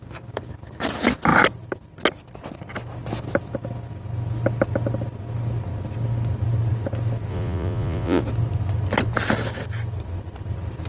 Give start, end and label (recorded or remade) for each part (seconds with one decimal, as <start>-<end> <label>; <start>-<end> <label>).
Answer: 0.0-7.3 recorded; 7.3-8.2 remade; 8.2-10.9 recorded